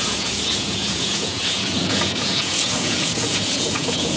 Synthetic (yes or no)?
yes